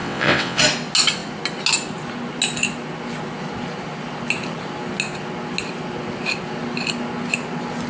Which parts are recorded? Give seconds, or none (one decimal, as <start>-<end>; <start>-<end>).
0.6-7.9